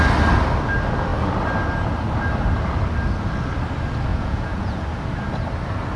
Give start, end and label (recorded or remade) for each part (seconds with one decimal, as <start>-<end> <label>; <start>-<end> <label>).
0.0-4.1 recorded; 4.1-4.8 remade; 4.8-6.0 recorded